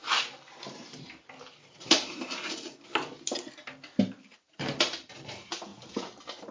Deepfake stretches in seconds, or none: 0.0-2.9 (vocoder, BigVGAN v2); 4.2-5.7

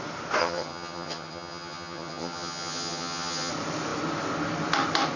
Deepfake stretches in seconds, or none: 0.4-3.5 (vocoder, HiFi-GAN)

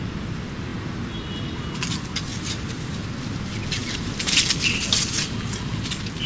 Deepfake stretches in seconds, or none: 2.3-2.9 (vocoder, BigVGAN v2); 3.8-4.4

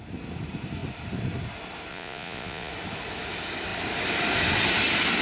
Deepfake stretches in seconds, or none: 1.9-2.7 (vocoder, Vocos)